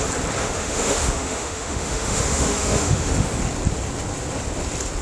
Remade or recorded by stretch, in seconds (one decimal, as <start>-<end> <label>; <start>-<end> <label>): 0.0-0.4 recorded; 0.4-3.4 remade; 3.4-5.0 recorded